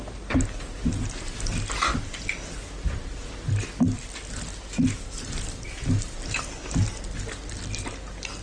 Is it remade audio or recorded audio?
recorded